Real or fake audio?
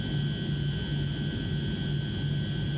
real